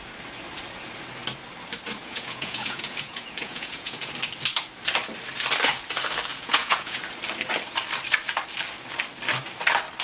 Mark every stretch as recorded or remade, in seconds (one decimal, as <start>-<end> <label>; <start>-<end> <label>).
0.0-2.0 recorded; 2.0-4.1 remade; 4.1-6.3 recorded; 6.3-7.0 remade; 7.0-10.0 recorded